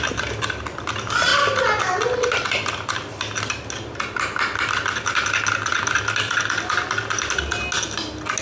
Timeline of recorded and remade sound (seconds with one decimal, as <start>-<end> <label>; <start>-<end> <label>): 0.0-8.4 recorded